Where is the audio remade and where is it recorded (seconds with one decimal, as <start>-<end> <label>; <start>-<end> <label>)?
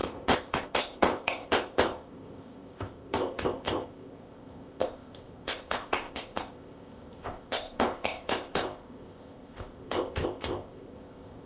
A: 0.0-11.5 remade